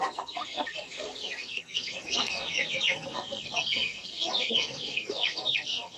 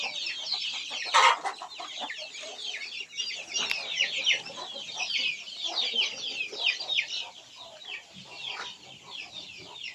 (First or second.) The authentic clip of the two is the second